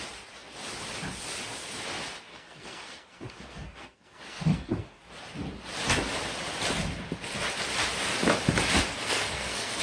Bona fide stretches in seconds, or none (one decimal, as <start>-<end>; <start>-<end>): 0.0-2.3; 5.0-8.9